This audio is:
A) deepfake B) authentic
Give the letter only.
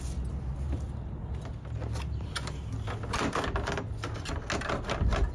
B